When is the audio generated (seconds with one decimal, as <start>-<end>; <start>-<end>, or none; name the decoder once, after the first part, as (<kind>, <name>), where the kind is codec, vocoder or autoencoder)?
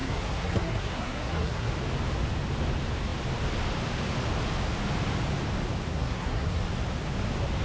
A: 0.0-1.7 (codec, SNAC); 5.9-6.6